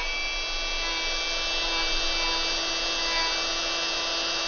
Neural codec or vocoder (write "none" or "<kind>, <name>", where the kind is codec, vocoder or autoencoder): none